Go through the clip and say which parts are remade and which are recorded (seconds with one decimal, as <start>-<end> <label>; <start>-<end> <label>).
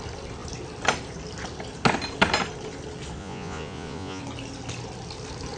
0.0-3.2 recorded; 3.2-4.2 remade; 4.2-5.6 recorded